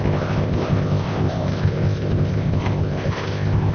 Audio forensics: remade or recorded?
remade